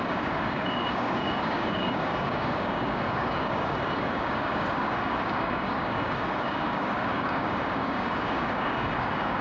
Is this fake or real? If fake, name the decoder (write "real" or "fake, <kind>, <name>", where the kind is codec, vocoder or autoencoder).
fake, codec, DAC